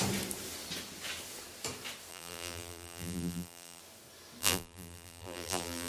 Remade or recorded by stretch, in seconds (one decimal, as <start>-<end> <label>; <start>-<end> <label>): 0.0-2.1 recorded; 2.1-3.8 remade; 3.8-4.4 recorded; 4.4-5.9 remade